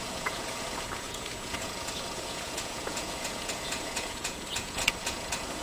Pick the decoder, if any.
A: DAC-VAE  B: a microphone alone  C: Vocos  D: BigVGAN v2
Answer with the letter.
C